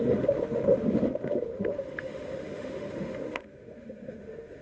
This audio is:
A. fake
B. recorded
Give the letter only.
A